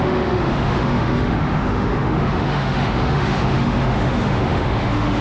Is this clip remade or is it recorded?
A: remade